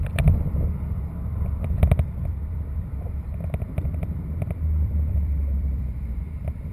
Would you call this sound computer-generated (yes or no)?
yes